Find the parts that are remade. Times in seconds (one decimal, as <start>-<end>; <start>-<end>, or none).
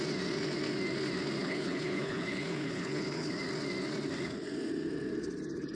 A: 1.4-3.3